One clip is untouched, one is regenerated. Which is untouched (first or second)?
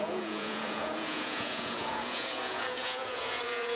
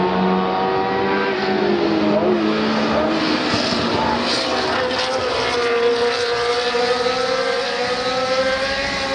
second